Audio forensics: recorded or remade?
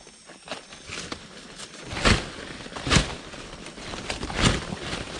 recorded